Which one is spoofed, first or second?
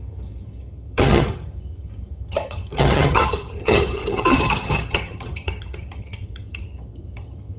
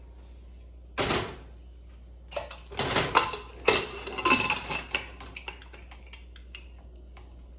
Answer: first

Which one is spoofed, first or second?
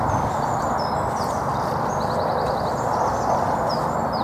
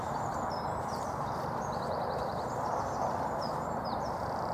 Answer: second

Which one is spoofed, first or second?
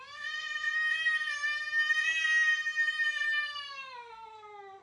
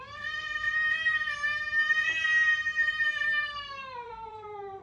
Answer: second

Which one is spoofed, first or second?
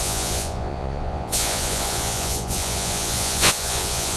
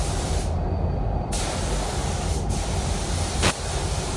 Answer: first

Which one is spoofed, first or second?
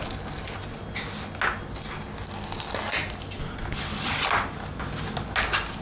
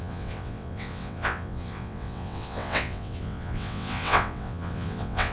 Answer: second